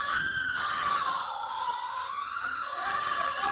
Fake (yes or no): yes